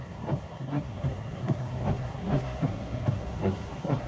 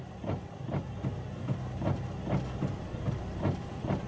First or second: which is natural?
second